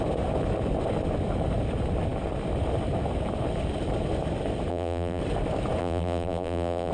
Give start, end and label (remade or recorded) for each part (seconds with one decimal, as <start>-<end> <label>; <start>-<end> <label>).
0.0-4.7 recorded; 4.7-5.2 remade; 5.2-5.8 recorded; 5.8-6.9 remade

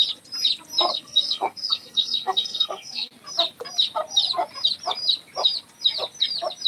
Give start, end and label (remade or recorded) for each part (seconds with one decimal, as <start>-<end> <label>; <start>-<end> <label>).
0.0-0.9 recorded; 0.9-3.1 remade; 3.1-6.7 recorded

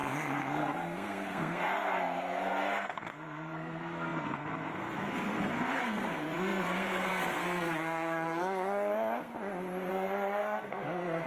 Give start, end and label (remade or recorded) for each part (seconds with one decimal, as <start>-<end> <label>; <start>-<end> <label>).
0.0-9.3 remade; 9.3-9.9 recorded; 9.9-11.3 remade

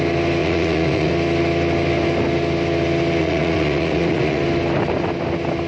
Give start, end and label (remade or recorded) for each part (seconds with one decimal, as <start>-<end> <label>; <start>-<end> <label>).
0.0-0.4 recorded; 0.4-1.1 remade; 1.1-3.2 recorded; 3.2-4.4 remade; 4.4-5.7 recorded

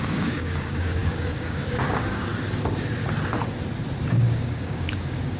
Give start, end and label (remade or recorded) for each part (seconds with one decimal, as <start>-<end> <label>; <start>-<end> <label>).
0.0-2.3 remade; 2.3-4.1 recorded; 4.1-5.4 remade

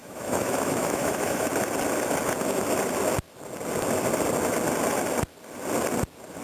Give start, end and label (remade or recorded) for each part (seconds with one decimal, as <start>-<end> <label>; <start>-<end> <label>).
0.0-1.5 remade; 1.5-6.4 recorded

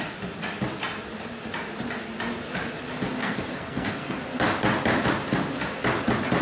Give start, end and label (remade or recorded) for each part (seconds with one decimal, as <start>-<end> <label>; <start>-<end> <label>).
0.0-3.2 recorded; 3.2-4.2 remade; 4.2-6.4 recorded

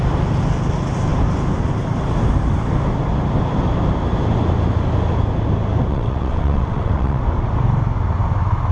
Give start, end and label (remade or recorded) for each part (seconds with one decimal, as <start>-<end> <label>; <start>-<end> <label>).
0.0-5.9 recorded; 5.9-7.2 remade; 7.2-8.7 recorded